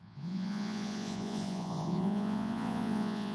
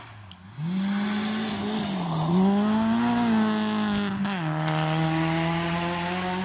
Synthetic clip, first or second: first